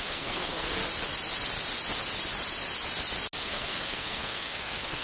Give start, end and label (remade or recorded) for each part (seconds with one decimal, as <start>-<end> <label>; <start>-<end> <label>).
0.0-0.8 remade; 0.8-3.4 recorded; 3.4-5.0 remade

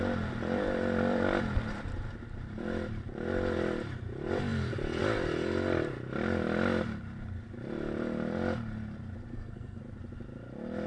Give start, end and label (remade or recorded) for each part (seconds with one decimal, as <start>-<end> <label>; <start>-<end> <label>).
0.0-9.3 recorded; 9.3-9.8 remade; 9.8-10.9 recorded

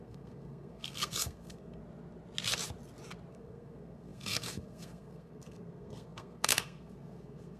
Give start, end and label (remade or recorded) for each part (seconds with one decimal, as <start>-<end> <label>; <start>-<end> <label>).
0.0-1.8 remade; 1.8-3.3 recorded; 3.3-7.6 remade

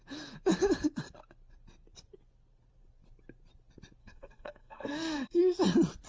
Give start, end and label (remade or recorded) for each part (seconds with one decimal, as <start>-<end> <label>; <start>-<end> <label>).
0.0-4.0 recorded; 4.0-5.4 remade; 5.4-6.1 recorded

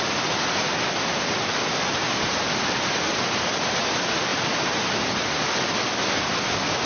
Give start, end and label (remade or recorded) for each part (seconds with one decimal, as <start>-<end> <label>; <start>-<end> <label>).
0.0-6.9 recorded